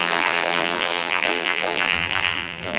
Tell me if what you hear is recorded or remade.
remade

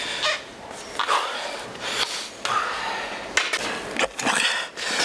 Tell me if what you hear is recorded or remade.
recorded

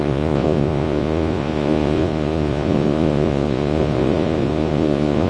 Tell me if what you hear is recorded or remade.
remade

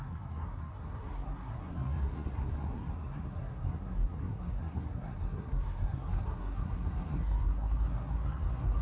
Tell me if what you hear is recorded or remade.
remade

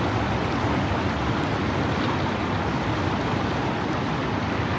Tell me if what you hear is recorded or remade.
recorded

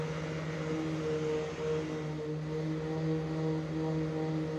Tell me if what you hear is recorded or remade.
recorded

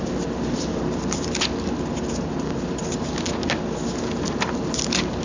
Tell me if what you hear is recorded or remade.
recorded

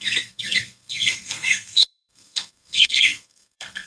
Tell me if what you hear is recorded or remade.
remade